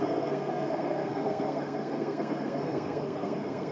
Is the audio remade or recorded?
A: remade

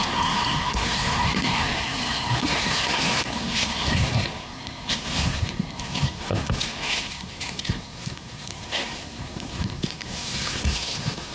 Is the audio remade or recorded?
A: remade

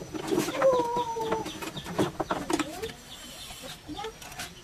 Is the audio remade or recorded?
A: recorded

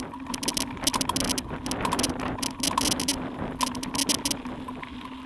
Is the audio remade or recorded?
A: recorded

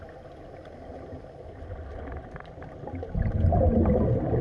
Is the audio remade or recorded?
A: recorded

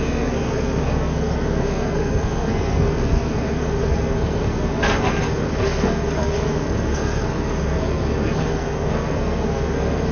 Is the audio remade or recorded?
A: remade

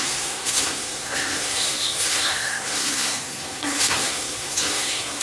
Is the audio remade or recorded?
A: remade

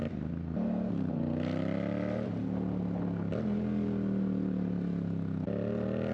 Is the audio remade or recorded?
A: recorded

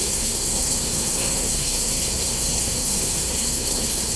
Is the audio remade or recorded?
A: remade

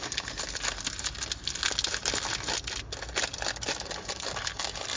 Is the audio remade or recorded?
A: recorded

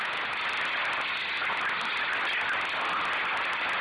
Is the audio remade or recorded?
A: recorded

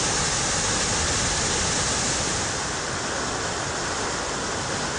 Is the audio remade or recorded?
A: recorded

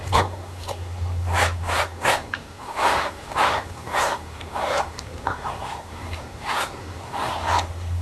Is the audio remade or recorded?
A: remade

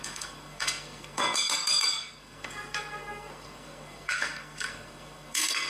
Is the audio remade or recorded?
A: remade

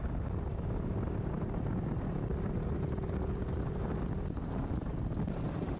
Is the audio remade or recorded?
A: recorded